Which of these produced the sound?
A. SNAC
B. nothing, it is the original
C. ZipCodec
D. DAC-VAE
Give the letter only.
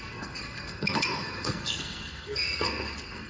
A